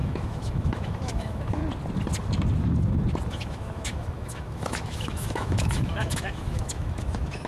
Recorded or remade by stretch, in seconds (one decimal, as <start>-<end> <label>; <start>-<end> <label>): 0.0-1.6 remade; 1.6-3.3 recorded; 3.3-7.5 remade